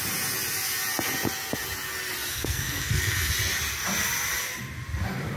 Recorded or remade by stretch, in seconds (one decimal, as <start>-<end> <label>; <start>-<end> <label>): 0.0-2.3 recorded; 2.3-3.3 remade; 3.3-5.4 recorded